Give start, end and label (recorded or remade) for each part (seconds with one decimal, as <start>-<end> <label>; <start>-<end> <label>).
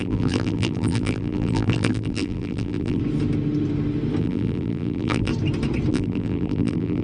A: 0.0-3.0 remade; 3.0-4.2 recorded; 4.2-5.3 remade; 5.3-5.9 recorded; 5.9-7.0 remade